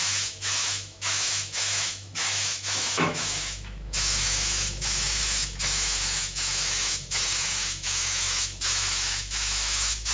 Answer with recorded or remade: remade